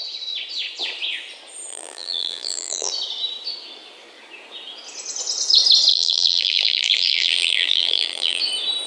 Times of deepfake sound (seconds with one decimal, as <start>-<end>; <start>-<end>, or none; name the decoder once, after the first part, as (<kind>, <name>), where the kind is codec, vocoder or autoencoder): 1.7-2.9 (vocoder, BigVGAN v2); 5.9-8.4